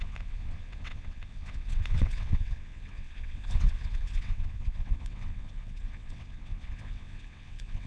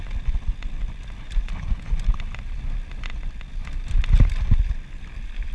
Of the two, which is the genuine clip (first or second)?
second